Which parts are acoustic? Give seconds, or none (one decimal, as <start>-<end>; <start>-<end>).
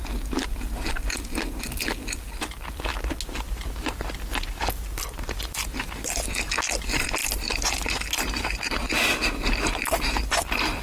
0.0-10.8